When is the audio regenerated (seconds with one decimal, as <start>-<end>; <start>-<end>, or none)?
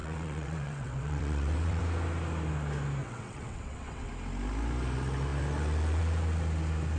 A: 0.0-1.8; 3.0-4.1